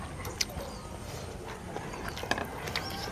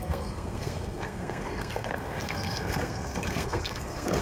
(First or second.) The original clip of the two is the first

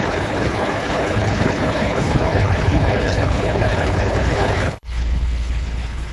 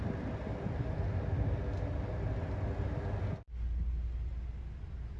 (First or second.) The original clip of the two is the second